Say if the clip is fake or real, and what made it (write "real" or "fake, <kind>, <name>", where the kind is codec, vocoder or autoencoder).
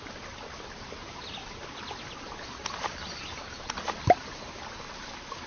real